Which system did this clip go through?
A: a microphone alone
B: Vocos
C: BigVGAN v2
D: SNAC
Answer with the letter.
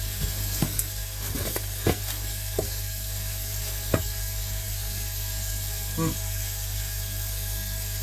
D